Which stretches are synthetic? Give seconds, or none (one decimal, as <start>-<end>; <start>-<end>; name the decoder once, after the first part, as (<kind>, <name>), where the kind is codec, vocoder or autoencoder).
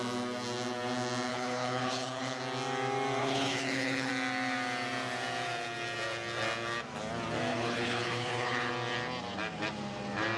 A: 1.3-2.4 (codec, HILCodec); 3.2-4.1; 7.5-8.7